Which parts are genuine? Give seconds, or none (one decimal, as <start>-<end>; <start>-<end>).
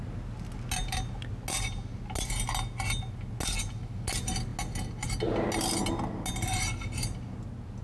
0.0-7.8